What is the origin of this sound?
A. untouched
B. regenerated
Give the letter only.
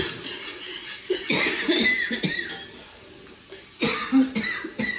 A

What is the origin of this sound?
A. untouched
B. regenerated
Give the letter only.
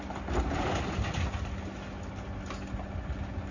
A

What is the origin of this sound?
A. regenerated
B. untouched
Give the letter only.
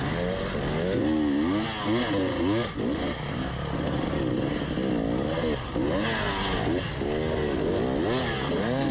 B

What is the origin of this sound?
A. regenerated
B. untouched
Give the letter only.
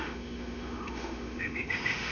A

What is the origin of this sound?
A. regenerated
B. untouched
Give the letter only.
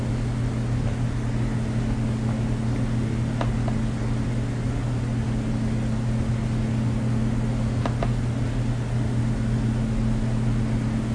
B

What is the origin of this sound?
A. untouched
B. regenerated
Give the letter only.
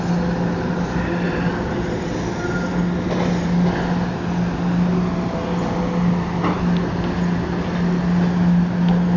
A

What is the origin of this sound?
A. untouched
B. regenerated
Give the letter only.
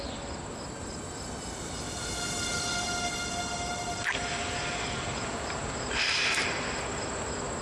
A